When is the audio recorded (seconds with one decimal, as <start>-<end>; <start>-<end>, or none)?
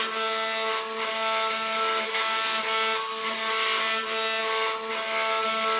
0.0-5.8